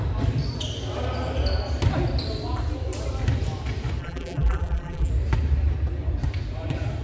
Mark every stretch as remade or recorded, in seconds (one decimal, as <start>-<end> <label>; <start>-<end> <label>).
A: 0.0-4.0 recorded; 4.0-5.1 remade; 5.1-7.0 recorded